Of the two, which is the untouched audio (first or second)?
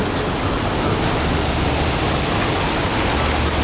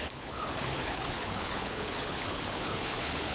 first